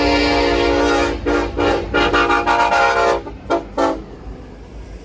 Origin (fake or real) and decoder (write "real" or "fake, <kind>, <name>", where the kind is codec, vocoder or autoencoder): real